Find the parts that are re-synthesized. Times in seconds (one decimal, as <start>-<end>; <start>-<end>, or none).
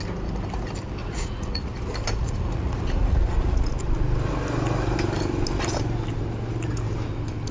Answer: 1.0-1.8; 2.2-3.7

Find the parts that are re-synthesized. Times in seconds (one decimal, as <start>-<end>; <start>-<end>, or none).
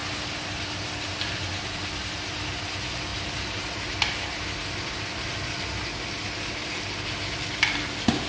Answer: none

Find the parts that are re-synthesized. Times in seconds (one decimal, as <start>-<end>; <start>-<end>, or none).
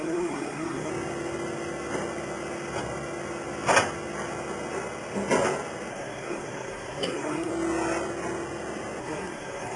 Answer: 0.0-0.9; 5.9-7.5; 9.0-9.8